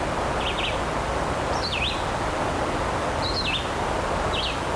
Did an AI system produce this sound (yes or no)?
no